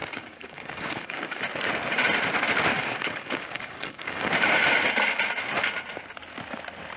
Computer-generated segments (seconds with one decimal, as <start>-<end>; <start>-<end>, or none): 0.0-1.4; 2.7-4.3